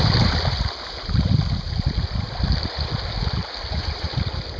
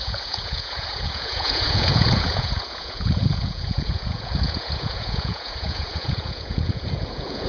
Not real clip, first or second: second